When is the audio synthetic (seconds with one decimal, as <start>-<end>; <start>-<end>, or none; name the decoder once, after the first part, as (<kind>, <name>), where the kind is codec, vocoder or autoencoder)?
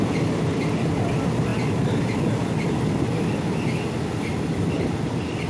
none